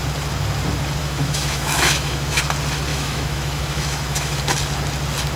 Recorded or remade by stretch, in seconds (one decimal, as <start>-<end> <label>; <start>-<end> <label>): 0.0-1.0 recorded; 1.0-2.4 remade; 2.4-2.9 recorded; 2.9-4.4 remade; 4.4-5.4 recorded